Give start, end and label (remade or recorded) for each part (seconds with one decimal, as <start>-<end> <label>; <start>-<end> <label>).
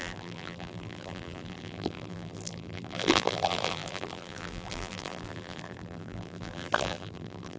0.0-7.6 remade